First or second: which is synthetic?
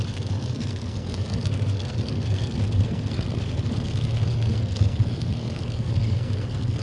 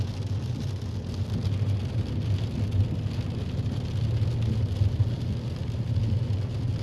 first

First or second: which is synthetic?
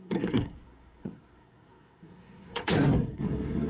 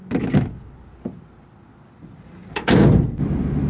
first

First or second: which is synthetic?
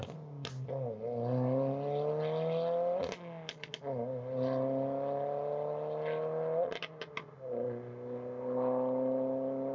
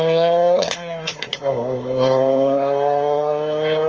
second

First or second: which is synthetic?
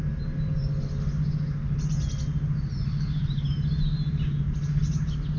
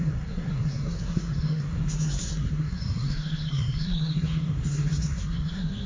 second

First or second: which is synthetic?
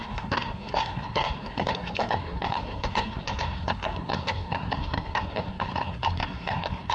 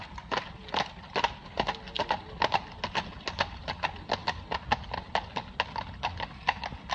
first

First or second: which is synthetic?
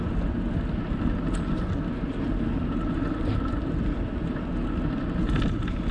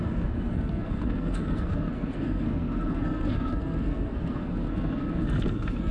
second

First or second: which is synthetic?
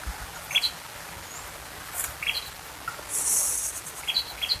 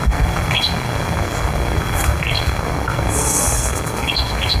second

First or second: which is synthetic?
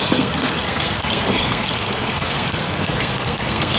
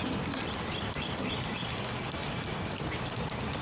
first